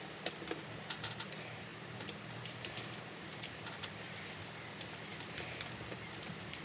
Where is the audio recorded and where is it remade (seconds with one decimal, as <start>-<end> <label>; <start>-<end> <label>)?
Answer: 0.0-1.7 recorded; 1.7-3.5 remade; 3.5-5.1 recorded; 5.1-6.6 remade